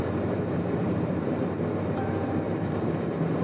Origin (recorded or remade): remade